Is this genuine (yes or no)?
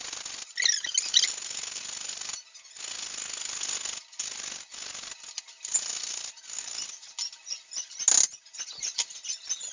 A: yes